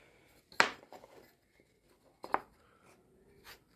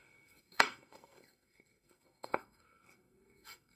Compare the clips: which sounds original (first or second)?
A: first